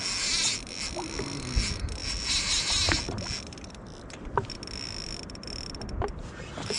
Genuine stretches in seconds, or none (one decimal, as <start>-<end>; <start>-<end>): 0.0-6.8